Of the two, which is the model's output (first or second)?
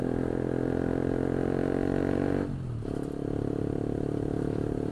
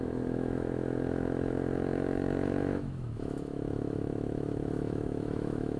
second